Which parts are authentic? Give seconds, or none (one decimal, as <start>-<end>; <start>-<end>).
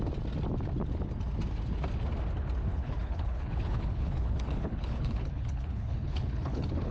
0.0-2.7